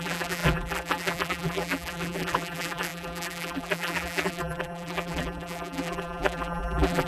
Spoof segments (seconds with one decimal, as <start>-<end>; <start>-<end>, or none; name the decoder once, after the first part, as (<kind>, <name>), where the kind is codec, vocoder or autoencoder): 0.0-7.1 (vocoder, BigVGAN v2)